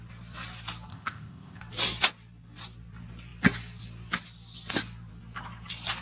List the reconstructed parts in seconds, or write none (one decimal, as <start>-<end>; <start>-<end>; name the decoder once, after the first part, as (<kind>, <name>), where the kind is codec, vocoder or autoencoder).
0.9-1.6 (codec, ZipCodec)